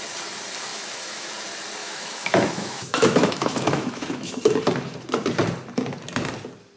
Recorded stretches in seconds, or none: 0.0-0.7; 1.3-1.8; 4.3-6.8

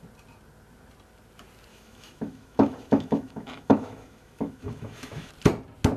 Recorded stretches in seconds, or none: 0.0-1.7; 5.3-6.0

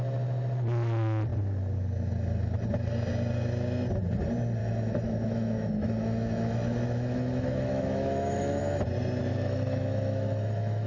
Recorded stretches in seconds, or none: 0.0-4.6; 8.6-9.2

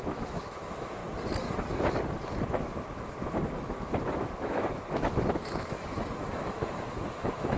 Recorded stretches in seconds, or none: 1.0-2.5